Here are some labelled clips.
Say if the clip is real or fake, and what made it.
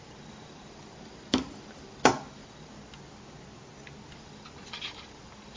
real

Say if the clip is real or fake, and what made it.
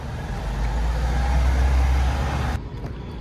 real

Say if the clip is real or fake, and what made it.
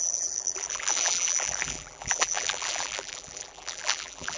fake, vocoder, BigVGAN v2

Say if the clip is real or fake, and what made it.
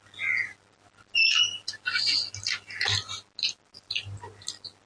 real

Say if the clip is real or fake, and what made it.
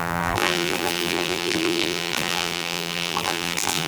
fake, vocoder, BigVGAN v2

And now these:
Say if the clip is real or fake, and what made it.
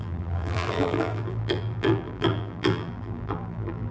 fake, vocoder, BigVGAN v2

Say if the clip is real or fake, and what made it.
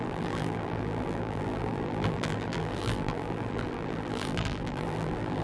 fake, vocoder, BigVGAN v2